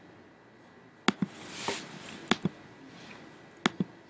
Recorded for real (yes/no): yes